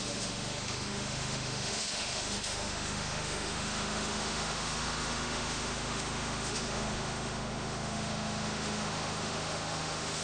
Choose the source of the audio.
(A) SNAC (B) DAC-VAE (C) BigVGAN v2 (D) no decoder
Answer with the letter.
B